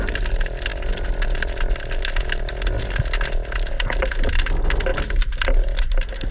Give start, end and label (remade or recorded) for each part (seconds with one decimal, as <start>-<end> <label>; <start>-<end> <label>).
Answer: 0.0-6.3 recorded